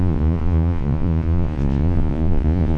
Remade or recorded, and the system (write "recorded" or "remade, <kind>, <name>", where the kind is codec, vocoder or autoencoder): remade, vocoder, Vocos